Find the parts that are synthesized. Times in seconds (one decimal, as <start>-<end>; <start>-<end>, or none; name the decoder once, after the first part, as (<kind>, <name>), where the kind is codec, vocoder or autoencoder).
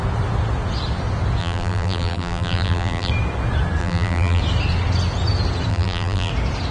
1.4-3.1 (vocoder, BigVGAN v2); 3.8-4.4; 5.7-6.3